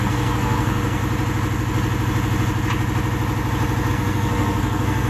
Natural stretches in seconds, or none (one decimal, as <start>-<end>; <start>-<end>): 1.0-3.9